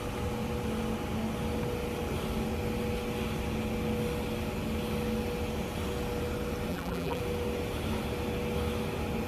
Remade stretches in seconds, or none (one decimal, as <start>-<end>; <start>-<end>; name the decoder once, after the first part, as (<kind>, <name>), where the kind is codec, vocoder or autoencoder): 6.7-7.2 (vocoder, BigVGAN v2)